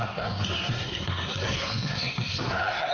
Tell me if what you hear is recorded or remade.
remade